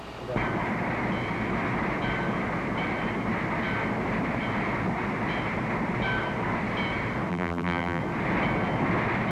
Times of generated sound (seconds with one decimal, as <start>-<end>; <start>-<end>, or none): 7.3-8.0